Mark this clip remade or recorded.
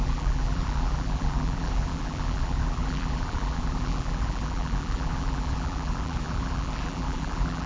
remade